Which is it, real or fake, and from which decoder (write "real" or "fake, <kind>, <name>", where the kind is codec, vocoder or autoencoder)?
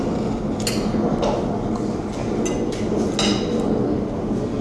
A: real